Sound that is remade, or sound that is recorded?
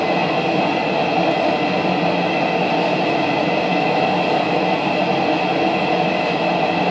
recorded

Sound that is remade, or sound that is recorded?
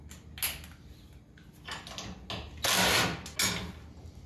recorded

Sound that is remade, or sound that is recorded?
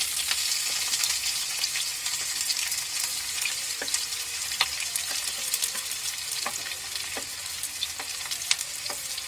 recorded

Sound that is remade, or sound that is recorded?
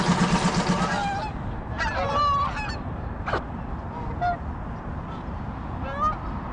recorded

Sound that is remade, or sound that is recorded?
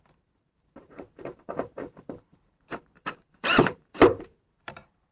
remade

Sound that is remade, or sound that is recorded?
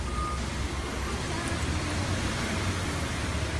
recorded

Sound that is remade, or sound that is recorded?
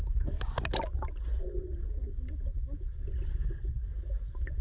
recorded